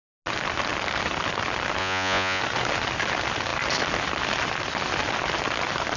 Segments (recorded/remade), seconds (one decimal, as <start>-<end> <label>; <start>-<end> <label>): 0.0-1.8 recorded; 1.8-2.4 remade; 2.4-6.0 recorded